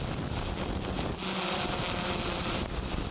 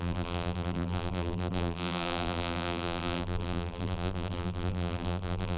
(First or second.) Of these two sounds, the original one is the first